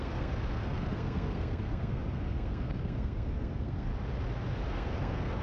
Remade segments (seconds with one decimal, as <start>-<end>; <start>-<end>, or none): 0.0-3.9; 4.7-5.4